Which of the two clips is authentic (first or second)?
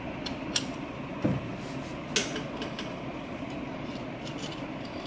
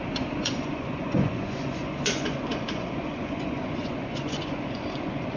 first